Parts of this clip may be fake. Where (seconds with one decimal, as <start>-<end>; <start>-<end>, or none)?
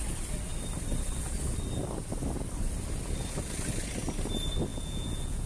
4.7-5.5